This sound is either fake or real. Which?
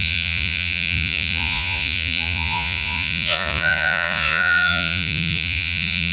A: fake